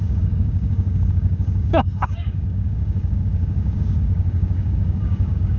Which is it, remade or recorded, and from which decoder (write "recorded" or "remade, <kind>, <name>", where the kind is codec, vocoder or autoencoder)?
remade, codec, DAC